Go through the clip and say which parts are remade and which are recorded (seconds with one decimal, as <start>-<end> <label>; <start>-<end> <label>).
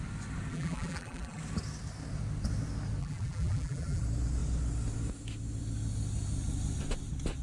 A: 0.0-0.5 recorded; 0.5-1.4 remade; 1.4-3.0 recorded; 3.0-4.0 remade; 4.0-7.4 recorded